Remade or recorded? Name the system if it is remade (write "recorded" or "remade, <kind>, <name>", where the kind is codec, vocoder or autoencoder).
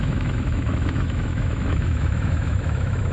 remade, autoencoder, DAC-VAE